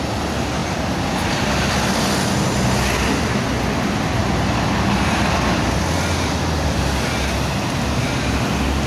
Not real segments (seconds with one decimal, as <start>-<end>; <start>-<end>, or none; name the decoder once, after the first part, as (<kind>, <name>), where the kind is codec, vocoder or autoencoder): 0.6-1.7 (vocoder, BigVGAN v2)